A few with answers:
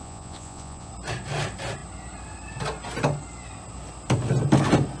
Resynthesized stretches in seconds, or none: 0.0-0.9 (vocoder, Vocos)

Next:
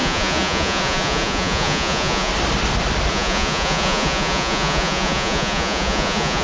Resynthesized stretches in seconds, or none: 0.0-2.3 (vocoder, Vocos); 3.1-6.4

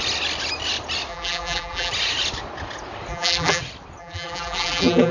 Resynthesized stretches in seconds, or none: 1.1-1.9 (vocoder, BigVGAN v2); 3.1-3.6; 4.0-5.1

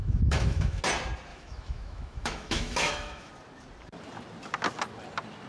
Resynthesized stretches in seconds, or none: 0.0-0.8 (autoencoder, DAC-VAE); 1.3-3.3

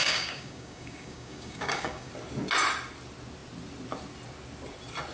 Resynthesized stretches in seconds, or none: 0.0-2.1 (codec, DAC)

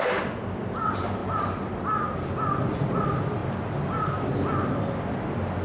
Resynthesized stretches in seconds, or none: none

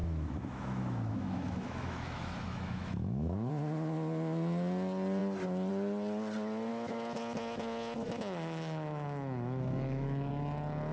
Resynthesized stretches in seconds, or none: 0.0-3.5 (autoencoder, DAC-VAE); 6.7-10.3

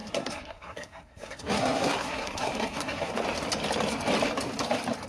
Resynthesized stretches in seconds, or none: 0.0-3.1 (codec, SNAC)